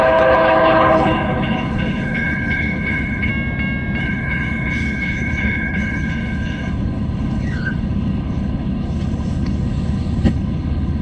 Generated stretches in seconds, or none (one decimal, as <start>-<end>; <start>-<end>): 0.0-3.3; 4.0-11.0